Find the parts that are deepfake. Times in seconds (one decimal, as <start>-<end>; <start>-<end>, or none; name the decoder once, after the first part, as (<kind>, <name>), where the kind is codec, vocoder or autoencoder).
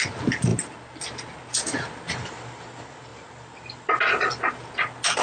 none